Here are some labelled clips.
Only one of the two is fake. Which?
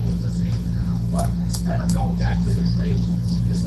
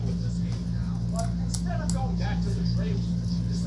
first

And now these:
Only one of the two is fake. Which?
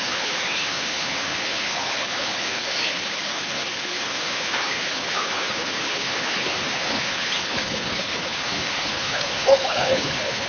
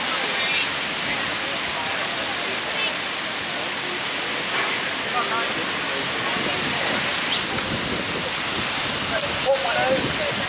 first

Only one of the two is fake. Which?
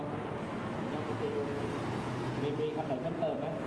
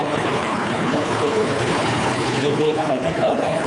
second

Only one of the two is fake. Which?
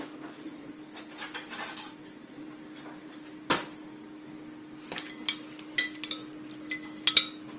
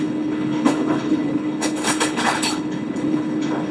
second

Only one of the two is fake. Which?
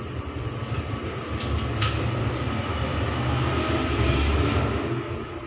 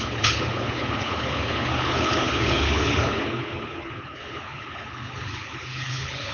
second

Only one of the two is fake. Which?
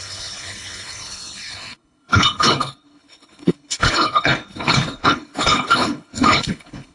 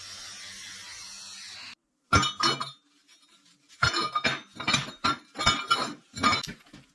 first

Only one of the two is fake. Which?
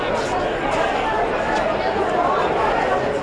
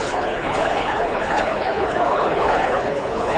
second